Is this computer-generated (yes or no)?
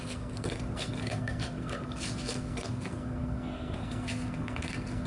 yes